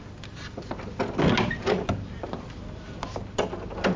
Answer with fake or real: real